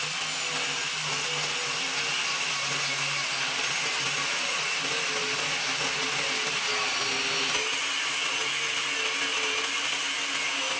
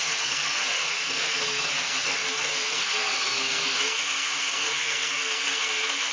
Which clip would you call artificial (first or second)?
second